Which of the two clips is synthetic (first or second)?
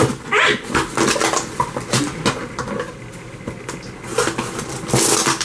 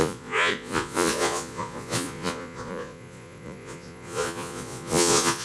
second